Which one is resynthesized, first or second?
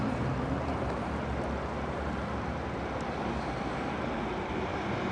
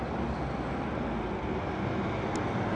first